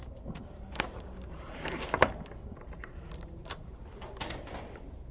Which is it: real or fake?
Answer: fake